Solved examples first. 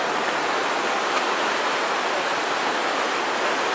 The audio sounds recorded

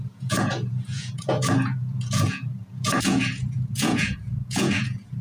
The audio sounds remade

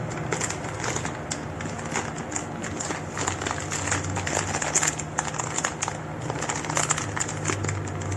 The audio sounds recorded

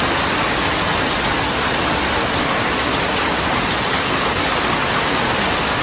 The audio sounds recorded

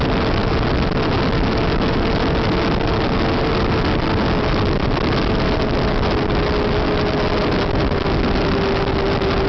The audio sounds recorded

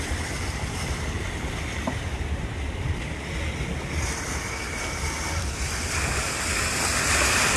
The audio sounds recorded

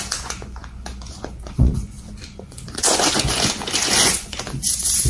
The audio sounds remade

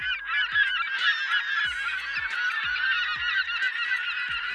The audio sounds recorded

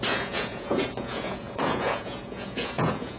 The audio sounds remade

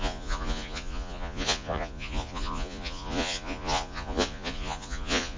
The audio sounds remade